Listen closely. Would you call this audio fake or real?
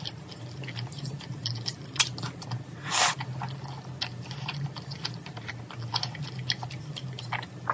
real